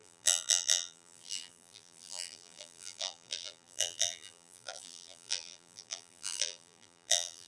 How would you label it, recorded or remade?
remade